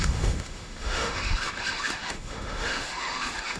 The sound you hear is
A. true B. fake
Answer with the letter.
B